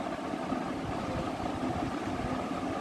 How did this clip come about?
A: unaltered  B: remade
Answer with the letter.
A